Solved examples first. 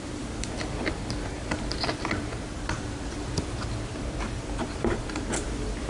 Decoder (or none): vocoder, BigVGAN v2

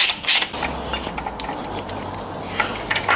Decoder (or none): none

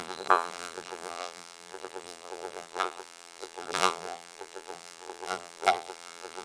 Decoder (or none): vocoder, BigVGAN v2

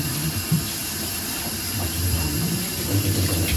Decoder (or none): vocoder, BigVGAN v2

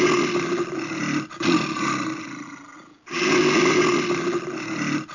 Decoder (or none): none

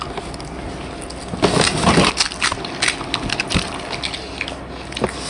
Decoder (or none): none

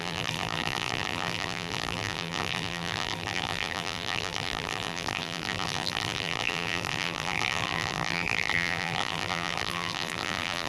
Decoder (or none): vocoder, BigVGAN v2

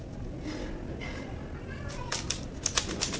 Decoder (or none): none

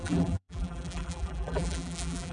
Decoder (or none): vocoder, BigVGAN v2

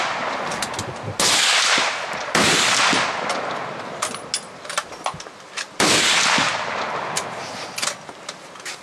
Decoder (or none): none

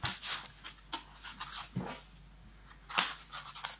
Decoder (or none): none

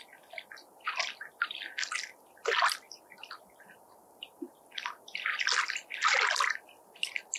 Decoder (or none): none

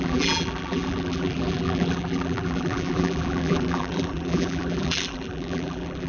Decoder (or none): vocoder, BigVGAN v2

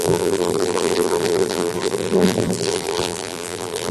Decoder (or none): vocoder, BigVGAN v2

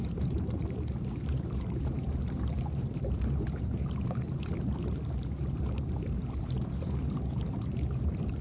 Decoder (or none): vocoder, BigVGAN v2